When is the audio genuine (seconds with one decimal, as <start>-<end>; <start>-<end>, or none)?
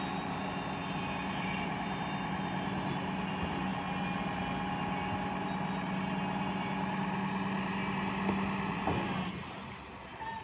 0.0-0.8; 2.8-10.4